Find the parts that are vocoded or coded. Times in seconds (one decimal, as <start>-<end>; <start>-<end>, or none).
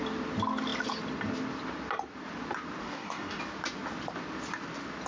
2.8-3.4